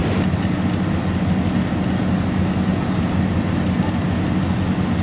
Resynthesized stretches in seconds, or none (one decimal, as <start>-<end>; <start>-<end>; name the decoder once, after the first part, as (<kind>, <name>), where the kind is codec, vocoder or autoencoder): none